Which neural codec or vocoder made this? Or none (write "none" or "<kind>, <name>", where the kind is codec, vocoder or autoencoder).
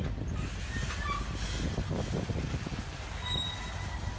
none